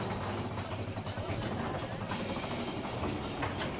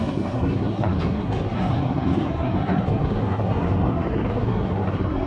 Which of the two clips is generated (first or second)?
second